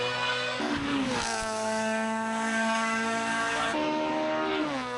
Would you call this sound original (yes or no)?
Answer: no